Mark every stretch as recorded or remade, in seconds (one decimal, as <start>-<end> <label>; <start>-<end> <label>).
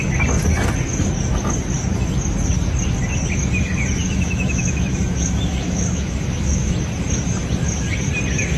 0.0-4.0 recorded; 4.0-6.7 remade; 6.7-8.6 recorded